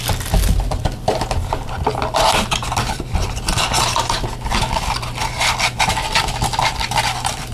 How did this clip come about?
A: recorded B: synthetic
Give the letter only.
A